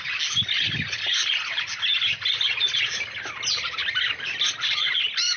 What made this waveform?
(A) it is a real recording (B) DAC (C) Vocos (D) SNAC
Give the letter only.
A